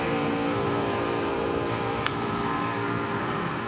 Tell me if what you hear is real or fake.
fake